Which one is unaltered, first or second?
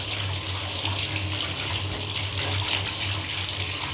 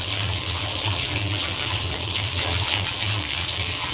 first